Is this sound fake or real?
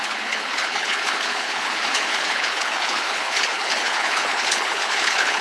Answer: fake